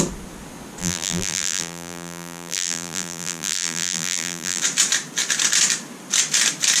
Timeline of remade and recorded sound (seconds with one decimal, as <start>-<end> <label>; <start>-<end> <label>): 0.0-0.8 recorded; 0.8-4.6 remade; 4.6-6.8 recorded